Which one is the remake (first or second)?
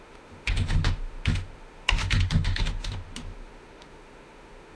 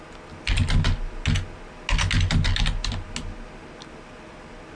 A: first